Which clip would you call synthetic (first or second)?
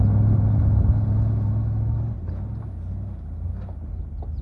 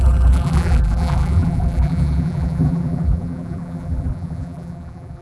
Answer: second